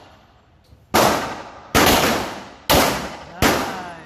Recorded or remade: recorded